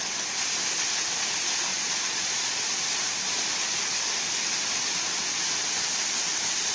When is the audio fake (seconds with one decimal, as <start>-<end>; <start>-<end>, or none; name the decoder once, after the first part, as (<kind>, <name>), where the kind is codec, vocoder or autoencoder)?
1.7-2.6 (vocoder, Vocos)